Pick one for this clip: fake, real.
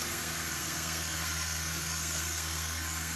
fake